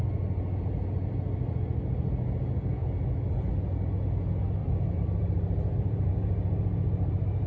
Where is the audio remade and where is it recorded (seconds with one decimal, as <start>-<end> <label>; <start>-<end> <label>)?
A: 0.0-4.6 recorded; 4.6-6.1 remade; 6.1-7.5 recorded